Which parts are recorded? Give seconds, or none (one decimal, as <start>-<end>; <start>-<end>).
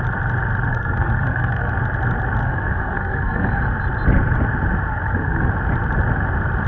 0.0-0.7; 1.7-2.4; 3.6-4.9; 5.5-6.7